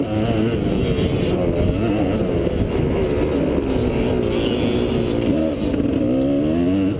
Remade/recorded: recorded